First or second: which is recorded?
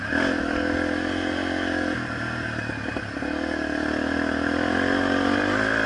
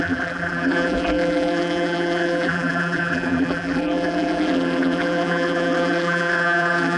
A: first